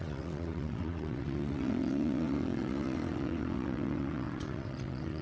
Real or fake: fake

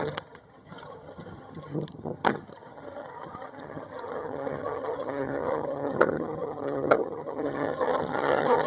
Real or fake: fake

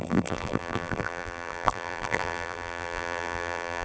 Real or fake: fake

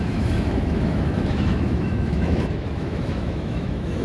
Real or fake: fake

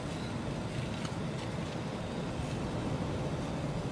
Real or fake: real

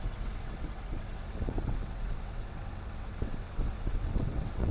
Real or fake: fake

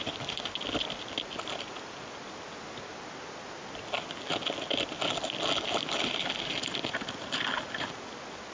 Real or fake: real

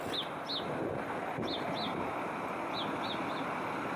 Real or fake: real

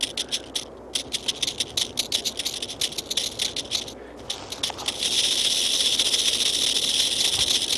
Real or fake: real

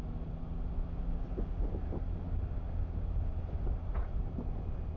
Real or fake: real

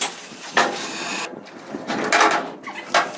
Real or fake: real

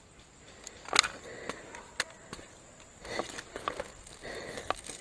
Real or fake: real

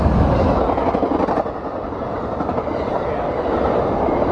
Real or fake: real